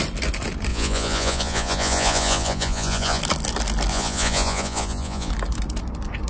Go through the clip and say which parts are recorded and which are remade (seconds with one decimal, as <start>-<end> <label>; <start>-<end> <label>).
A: 0.0-0.7 recorded; 0.7-3.2 remade; 3.2-3.9 recorded; 3.9-5.3 remade; 5.3-6.3 recorded